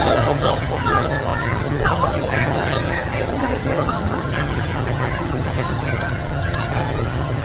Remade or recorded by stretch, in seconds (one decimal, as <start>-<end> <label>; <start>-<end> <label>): 0.0-7.4 remade